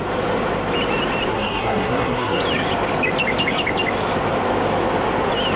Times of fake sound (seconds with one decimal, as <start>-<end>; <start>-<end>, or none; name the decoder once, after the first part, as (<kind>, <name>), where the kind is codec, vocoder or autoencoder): 1.3-2.4 (codec, SNAC)